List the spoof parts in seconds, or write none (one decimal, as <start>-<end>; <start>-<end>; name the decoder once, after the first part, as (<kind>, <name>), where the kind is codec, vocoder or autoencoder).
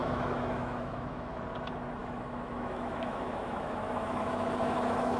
0.0-1.4 (autoencoder, DAC-VAE); 2.0-5.2